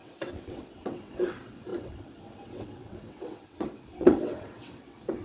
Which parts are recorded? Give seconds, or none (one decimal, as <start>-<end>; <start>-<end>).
none